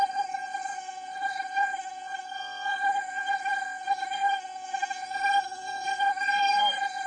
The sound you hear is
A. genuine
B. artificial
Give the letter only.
B